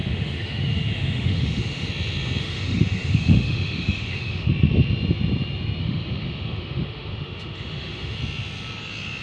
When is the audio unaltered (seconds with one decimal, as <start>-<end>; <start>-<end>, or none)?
1.9-2.4; 4.5-5.8; 8.2-9.2